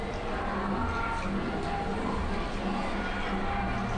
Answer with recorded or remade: recorded